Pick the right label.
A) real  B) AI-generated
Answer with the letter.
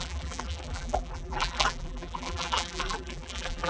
B